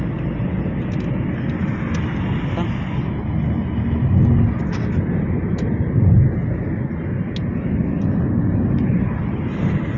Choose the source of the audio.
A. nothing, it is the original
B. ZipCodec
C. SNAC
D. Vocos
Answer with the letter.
A